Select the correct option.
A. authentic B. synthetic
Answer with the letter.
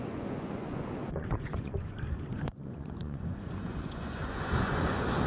B